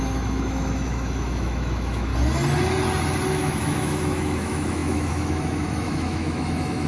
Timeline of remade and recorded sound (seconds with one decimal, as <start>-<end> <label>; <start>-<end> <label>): 0.0-2.1 remade; 2.1-3.3 recorded; 3.3-6.9 remade